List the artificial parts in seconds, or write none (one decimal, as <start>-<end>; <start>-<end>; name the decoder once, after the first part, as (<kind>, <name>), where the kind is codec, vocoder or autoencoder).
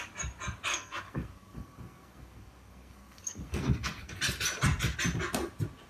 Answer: 0.7-4.2 (codec, SNAC)